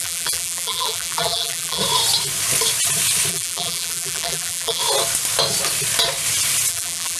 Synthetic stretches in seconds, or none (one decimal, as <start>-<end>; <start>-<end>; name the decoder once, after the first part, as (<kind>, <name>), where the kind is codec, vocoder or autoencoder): 0.0-1.8 (vocoder, BigVGAN v2); 3.3-4.8; 6.7-7.2

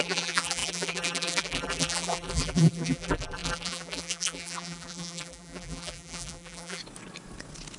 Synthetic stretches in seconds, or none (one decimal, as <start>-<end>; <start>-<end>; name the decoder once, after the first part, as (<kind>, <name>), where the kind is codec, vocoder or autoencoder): 0.0-6.8 (vocoder, BigVGAN v2)

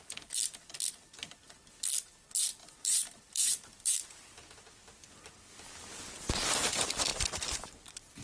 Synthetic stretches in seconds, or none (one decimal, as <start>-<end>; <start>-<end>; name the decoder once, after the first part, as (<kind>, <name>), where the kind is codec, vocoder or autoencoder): 2.6-4.2 (vocoder, BigVGAN v2)

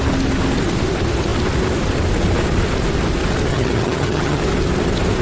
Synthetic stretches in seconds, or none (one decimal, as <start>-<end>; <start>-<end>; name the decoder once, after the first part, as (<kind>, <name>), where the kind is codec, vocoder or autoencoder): 3.5-4.4 (vocoder, HiFi-GAN)

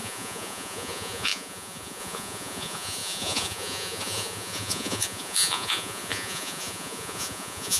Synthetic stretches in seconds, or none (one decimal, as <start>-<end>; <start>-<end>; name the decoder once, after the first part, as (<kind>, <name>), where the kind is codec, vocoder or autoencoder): 0.0-7.8 (vocoder, Vocos)

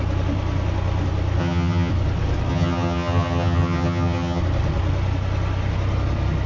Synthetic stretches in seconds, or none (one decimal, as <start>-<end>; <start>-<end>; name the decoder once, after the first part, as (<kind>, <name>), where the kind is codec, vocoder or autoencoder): 1.4-1.9 (vocoder, HiFi-GAN); 2.5-4.4

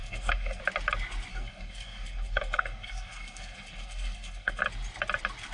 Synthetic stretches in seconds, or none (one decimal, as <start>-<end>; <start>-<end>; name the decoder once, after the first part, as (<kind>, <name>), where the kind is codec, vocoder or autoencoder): 0.0-0.6 (codec, SNAC); 1.3-4.6

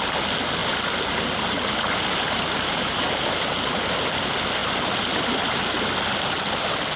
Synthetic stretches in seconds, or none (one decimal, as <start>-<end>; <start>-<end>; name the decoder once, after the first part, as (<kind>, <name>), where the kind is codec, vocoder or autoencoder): none